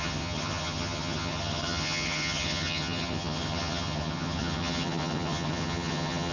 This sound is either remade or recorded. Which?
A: remade